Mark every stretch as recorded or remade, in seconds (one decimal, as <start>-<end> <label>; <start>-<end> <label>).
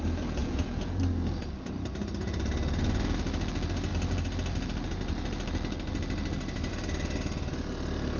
0.0-0.4 recorded; 0.4-1.0 remade; 1.0-8.2 recorded